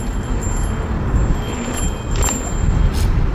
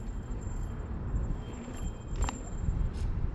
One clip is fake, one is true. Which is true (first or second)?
first